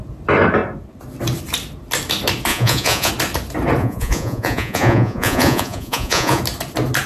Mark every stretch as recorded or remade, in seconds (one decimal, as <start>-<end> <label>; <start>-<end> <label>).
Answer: 0.0-2.5 recorded; 2.5-3.1 remade; 3.1-3.8 recorded; 3.8-6.4 remade; 6.4-7.1 recorded